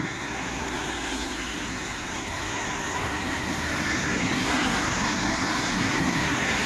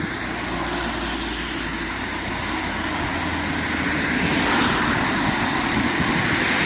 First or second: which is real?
second